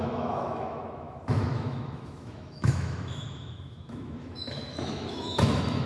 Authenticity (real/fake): fake